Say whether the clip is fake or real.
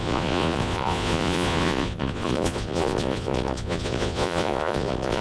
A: fake